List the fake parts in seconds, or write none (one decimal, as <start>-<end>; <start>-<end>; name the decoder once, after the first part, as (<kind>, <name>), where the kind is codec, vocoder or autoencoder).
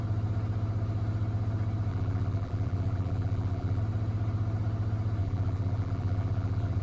1.9-3.8 (vocoder, BigVGAN v2); 5.2-6.8